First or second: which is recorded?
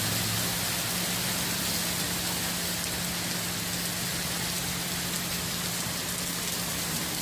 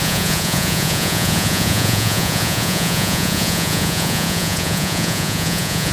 first